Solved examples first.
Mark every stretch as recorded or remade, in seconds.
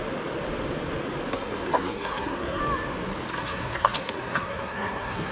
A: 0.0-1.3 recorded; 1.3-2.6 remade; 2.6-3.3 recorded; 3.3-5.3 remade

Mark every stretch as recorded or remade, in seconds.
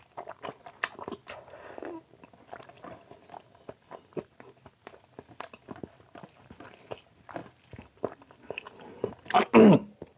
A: 0.0-10.2 recorded